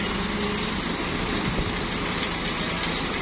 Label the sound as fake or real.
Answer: real